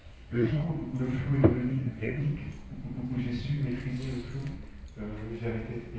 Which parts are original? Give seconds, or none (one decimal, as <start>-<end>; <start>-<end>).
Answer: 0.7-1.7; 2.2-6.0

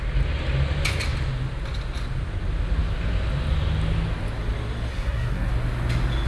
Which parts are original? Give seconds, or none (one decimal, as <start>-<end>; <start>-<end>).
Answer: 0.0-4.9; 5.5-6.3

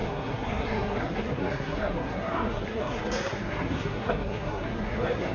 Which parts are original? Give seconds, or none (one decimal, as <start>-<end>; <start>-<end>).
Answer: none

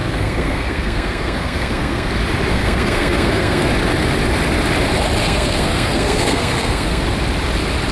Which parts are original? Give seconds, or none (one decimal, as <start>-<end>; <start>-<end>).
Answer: 2.1-2.5; 3.7-5.2; 7.0-7.9